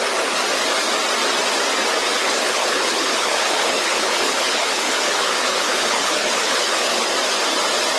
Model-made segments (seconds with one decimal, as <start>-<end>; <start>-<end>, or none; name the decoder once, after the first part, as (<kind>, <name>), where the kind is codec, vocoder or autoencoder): 2.2-7.0 (codec, HILCodec)